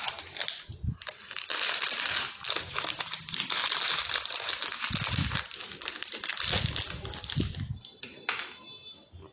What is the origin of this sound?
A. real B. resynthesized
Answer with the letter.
A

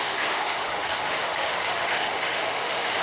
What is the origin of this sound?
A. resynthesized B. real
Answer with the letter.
A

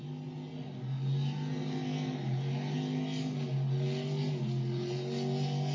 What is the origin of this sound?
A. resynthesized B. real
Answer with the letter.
B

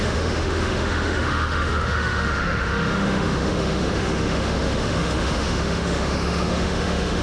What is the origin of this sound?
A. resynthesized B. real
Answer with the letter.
A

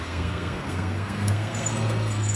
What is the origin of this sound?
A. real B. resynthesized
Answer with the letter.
B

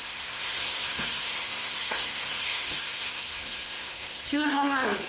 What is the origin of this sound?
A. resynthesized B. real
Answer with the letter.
A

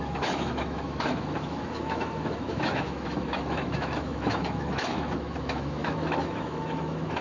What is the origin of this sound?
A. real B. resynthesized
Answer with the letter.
B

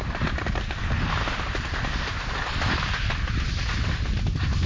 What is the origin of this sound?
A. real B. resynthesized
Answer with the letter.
A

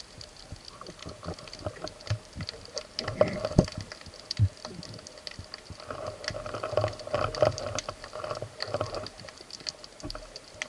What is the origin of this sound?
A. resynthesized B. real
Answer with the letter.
B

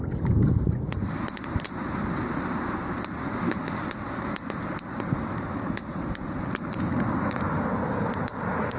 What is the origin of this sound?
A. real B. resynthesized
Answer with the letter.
A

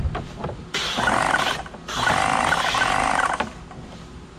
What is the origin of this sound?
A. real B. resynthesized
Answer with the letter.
A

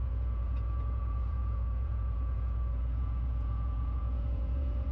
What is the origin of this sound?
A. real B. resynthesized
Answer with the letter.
B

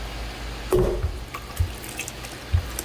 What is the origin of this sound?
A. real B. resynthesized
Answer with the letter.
A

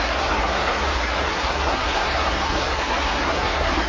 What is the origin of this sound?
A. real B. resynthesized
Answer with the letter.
B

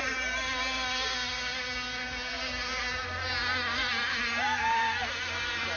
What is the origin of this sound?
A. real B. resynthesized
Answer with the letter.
A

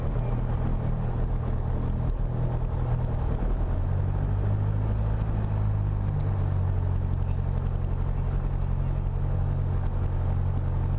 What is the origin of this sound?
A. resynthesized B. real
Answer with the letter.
B